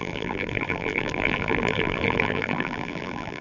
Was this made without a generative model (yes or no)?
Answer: no